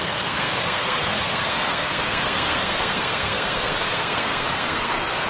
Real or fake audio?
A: fake